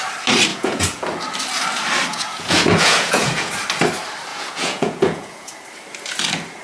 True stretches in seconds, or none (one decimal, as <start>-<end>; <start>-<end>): 0.0-0.5; 1.0-2.1; 3.5-4.3; 5.5-6.6